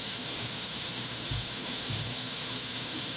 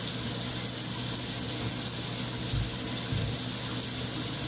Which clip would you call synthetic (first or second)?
first